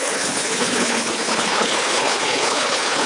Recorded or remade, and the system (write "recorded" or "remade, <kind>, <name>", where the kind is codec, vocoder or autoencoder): remade, codec, HILCodec